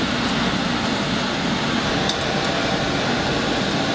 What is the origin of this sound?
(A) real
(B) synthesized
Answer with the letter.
A